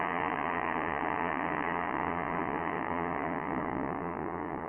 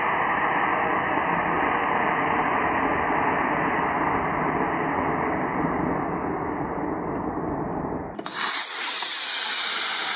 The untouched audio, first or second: second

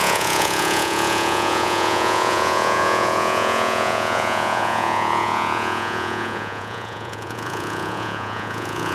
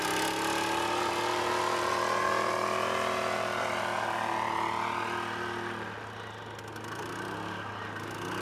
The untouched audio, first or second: second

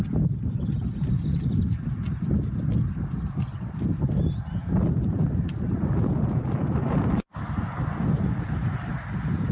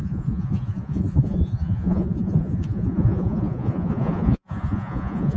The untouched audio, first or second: first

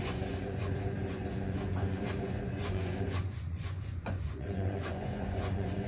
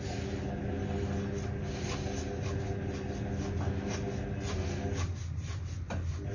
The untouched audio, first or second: second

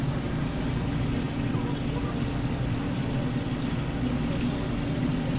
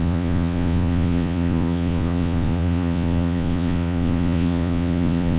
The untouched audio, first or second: first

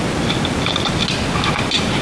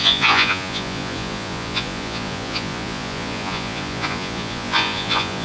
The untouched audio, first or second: first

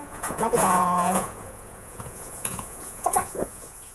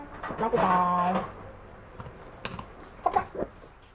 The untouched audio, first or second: second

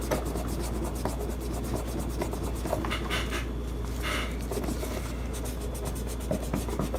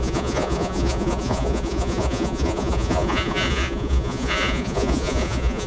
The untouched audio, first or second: first